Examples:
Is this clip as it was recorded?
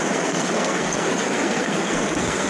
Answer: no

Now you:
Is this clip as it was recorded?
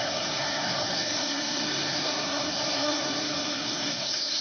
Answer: no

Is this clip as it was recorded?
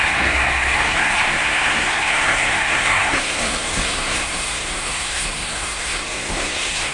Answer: no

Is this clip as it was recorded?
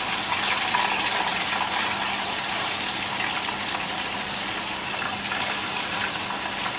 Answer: yes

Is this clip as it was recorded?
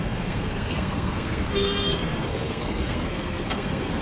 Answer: no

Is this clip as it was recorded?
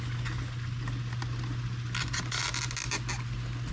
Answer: yes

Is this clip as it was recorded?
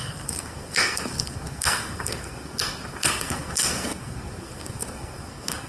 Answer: no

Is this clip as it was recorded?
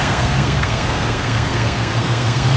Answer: no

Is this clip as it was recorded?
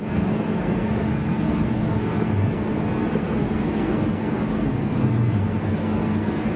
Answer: no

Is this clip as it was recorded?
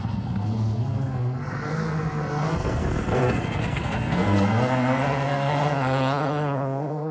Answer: no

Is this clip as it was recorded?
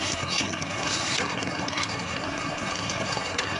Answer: no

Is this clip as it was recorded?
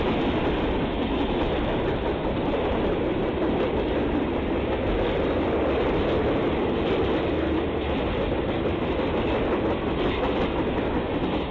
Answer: yes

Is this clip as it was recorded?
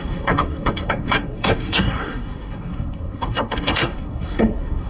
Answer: no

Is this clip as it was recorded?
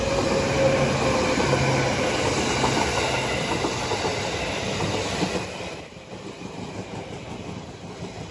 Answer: yes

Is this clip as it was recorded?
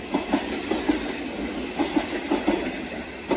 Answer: yes